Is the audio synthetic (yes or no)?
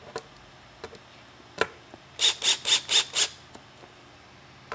no